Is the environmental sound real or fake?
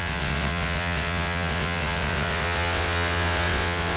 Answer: fake